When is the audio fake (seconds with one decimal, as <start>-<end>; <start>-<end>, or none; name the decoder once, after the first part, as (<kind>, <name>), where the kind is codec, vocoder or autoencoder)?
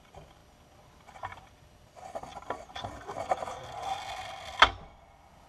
0.0-0.4 (vocoder, BigVGAN v2); 1.4-5.5